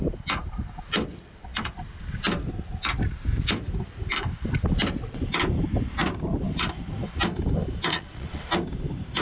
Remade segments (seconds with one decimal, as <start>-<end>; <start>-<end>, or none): 7.9-8.4